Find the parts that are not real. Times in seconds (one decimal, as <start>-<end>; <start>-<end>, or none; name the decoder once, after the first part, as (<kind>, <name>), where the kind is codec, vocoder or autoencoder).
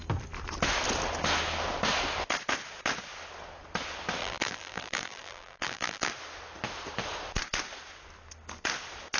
4.2-6.1 (vocoder, BigVGAN v2)